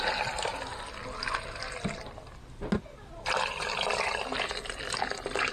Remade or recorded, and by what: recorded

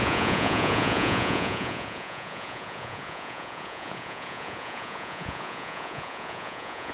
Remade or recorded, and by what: remade, vocoder, Vocos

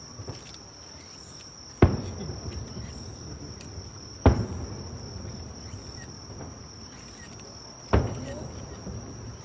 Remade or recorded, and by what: recorded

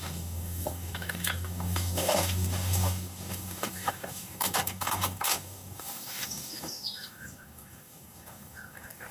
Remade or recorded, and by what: remade, codec, DAC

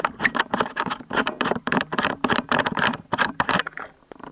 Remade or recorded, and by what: remade, vocoder, BigVGAN v2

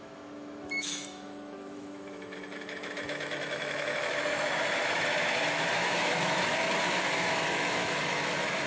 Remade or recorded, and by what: remade, autoencoder, DAC-VAE